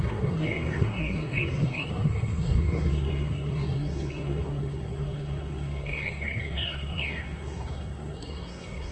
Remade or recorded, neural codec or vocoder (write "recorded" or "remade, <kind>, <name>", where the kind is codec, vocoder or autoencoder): remade, codec, SNAC